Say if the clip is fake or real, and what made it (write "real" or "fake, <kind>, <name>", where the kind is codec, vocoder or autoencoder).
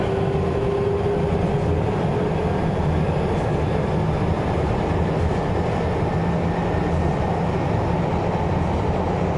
real